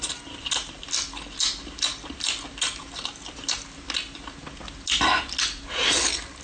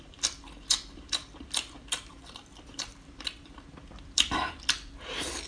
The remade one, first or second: second